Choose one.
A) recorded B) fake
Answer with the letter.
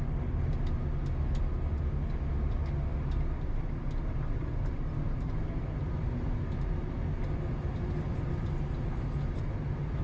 A